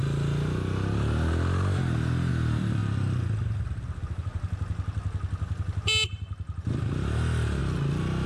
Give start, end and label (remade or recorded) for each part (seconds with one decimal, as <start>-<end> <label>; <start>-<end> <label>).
0.0-8.3 recorded